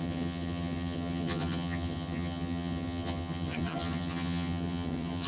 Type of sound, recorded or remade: remade